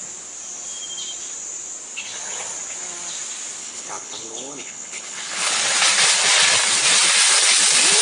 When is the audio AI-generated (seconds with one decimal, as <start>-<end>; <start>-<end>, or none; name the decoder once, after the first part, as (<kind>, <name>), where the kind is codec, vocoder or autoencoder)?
3.6-5.6 (codec, HILCodec)